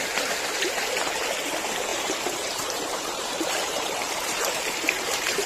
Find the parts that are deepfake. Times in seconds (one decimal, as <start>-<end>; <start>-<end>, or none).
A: 1.9-5.5